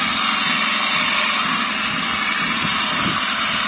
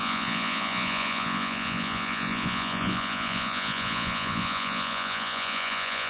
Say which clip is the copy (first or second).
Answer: second